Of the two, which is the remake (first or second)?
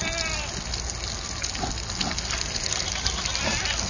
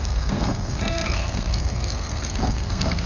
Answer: second